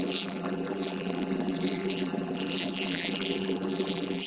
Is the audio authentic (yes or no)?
no